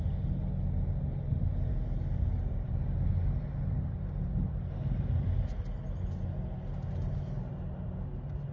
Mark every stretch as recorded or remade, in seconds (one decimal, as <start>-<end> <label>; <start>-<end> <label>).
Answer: 0.0-8.5 recorded